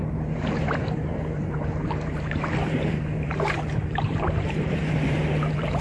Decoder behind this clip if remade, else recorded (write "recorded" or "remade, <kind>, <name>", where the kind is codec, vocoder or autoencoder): remade, vocoder, BigVGAN v2